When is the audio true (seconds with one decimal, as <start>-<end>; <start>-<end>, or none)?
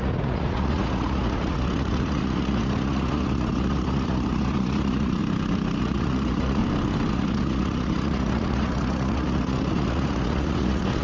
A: 5.2-5.8; 6.6-7.1